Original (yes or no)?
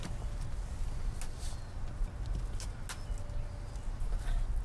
yes